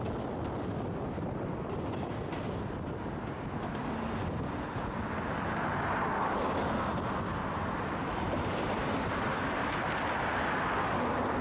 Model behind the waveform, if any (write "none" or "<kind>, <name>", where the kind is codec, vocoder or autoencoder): none